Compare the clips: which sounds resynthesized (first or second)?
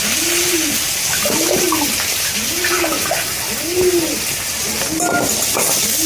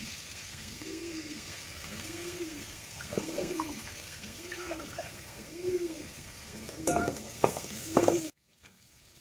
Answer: second